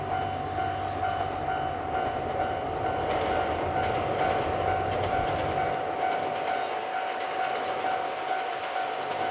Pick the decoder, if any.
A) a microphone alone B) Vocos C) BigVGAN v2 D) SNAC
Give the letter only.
A